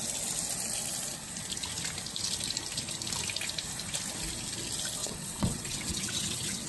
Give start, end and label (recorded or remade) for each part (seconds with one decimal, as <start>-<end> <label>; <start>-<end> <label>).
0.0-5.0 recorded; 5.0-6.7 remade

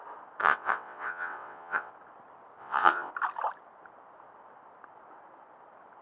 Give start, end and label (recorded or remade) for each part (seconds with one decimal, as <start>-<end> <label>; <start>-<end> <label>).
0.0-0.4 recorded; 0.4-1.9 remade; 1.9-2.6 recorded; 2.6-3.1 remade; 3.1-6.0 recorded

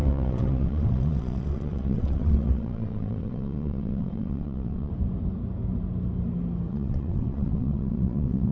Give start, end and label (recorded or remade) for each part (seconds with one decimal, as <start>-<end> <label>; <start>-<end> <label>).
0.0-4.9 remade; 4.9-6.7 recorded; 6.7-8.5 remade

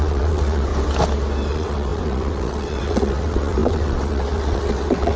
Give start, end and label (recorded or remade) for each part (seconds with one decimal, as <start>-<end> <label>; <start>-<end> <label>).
0.0-0.7 remade; 0.7-1.5 recorded; 1.5-5.2 remade